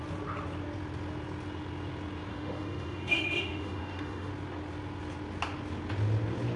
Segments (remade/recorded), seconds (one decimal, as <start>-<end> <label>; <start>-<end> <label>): 0.0-2.3 recorded; 2.3-4.3 remade; 4.3-6.6 recorded